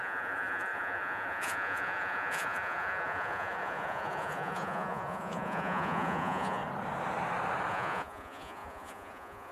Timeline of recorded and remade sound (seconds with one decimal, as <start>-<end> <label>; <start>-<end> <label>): 0.0-6.6 remade; 6.6-7.7 recorded; 7.7-9.5 remade